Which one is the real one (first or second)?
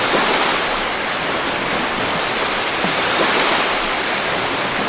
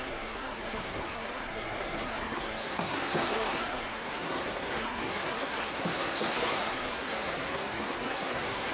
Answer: first